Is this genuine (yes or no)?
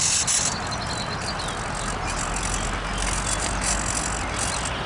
yes